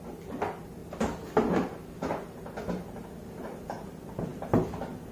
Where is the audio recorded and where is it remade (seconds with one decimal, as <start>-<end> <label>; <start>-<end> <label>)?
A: 0.0-5.1 recorded